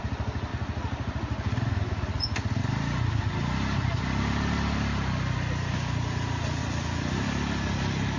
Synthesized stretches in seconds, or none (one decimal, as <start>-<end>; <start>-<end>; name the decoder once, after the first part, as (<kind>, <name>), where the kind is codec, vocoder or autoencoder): none

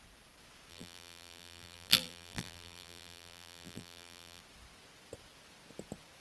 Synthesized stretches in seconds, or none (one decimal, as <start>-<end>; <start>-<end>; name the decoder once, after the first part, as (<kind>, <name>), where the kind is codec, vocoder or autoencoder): 0.7-4.4 (vocoder, BigVGAN v2)

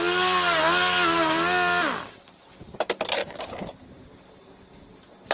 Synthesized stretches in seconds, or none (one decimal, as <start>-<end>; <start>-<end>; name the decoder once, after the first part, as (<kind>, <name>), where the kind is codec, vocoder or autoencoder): 3.2-3.8 (codec, DAC)

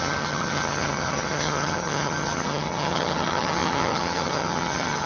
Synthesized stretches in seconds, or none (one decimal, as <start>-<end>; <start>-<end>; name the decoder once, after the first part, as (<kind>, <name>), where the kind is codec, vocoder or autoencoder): 0.0-5.1 (vocoder, HiFi-GAN)

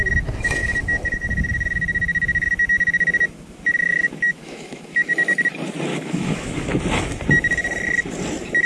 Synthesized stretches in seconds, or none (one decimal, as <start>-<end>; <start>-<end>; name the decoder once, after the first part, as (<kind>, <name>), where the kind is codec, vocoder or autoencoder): 0.6-5.1 (autoencoder, DAC-VAE); 5.9-6.8

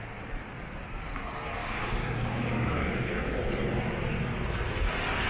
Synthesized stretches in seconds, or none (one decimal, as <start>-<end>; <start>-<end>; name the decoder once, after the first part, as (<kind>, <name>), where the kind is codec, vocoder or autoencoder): 1.6-3.4 (codec, DAC)

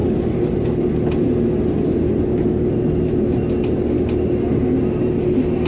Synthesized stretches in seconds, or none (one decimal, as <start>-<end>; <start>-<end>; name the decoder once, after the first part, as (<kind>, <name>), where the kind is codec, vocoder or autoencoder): none